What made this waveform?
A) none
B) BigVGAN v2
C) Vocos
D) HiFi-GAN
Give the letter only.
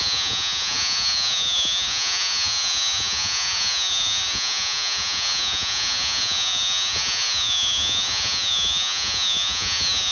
C